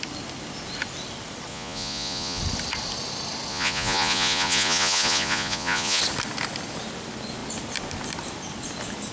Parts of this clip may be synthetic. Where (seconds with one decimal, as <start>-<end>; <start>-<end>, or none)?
1.5-2.4; 3.5-6.0